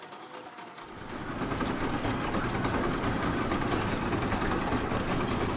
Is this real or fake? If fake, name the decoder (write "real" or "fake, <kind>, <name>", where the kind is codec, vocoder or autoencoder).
real